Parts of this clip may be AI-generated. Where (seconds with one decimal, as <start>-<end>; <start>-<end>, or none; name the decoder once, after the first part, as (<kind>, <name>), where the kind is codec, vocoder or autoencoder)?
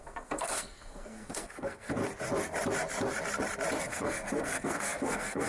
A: 0.0-2.0 (codec, SNAC); 3.8-5.5